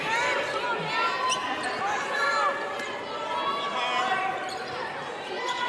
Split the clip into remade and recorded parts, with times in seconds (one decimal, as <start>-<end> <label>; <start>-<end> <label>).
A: 0.0-1.0 remade; 1.0-4.0 recorded; 4.0-5.7 remade